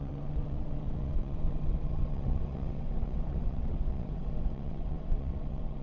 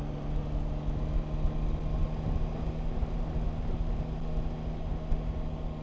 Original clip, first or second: second